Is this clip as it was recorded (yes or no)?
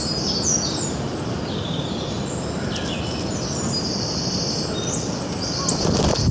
yes